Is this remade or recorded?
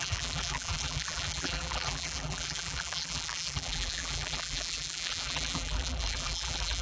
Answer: remade